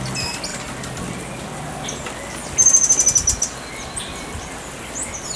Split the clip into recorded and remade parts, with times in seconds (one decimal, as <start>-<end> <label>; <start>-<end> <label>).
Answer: 0.0-5.4 recorded